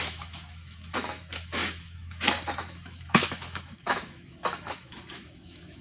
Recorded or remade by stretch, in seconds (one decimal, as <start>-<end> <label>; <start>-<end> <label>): 0.0-5.8 remade